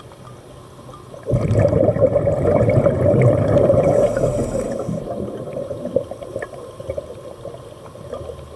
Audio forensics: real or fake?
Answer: real